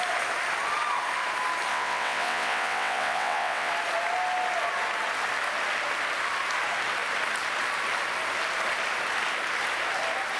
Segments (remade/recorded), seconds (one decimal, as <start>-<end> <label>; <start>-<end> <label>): 0.0-1.7 recorded; 1.7-3.7 remade; 3.7-10.4 recorded